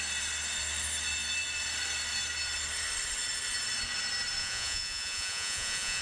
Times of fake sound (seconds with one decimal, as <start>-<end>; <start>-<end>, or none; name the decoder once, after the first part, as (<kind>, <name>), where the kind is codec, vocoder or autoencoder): 4.4-6.0 (vocoder, Vocos)